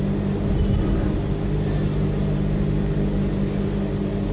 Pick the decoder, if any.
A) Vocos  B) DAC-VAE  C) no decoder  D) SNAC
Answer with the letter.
C